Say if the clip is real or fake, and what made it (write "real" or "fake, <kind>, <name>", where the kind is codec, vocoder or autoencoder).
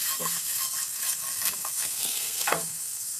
fake, codec, SNAC